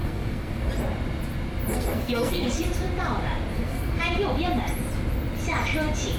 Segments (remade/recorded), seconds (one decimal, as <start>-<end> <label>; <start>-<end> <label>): 0.0-0.7 remade; 0.7-1.7 recorded; 1.7-2.6 remade; 2.6-3.5 recorded; 3.5-4.0 remade; 4.0-6.2 recorded